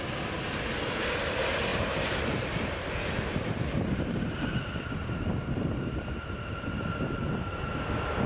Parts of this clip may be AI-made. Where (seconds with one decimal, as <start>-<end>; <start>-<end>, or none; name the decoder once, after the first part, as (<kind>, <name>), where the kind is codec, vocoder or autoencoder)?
1.7-4.6 (vocoder, BigVGAN v2)